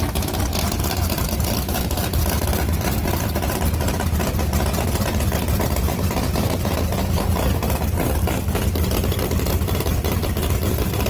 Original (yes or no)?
no